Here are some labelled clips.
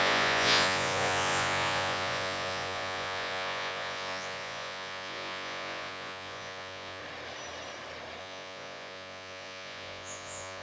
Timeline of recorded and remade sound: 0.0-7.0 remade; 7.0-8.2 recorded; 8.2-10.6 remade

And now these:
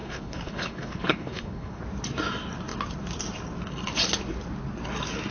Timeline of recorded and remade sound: 0.0-1.8 remade; 1.8-5.3 recorded

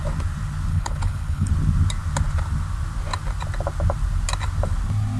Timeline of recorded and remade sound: 0.0-0.7 recorded; 0.7-1.5 remade; 1.5-5.2 recorded

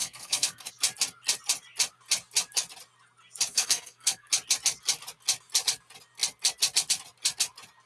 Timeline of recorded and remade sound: 0.0-0.7 remade; 0.7-3.5 recorded; 3.5-4.3 remade; 4.3-7.9 recorded

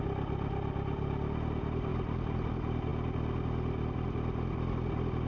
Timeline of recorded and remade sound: 0.0-5.3 recorded

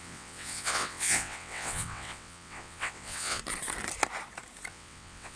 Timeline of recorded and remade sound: 0.0-3.4 remade; 3.4-4.7 recorded; 4.7-5.4 remade

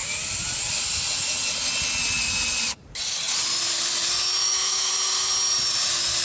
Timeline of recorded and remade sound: 0.0-4.4 recorded; 4.4-4.9 remade; 4.9-6.2 recorded

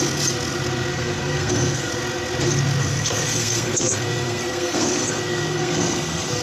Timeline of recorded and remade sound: 0.0-0.9 recorded; 0.9-1.9 remade; 1.9-2.8 recorded; 2.8-6.4 remade